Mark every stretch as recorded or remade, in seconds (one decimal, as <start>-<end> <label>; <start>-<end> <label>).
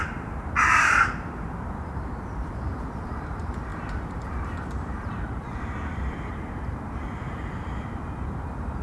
0.0-8.8 remade